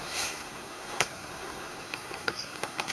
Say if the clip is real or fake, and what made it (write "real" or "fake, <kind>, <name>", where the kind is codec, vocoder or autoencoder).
fake, codec, SNAC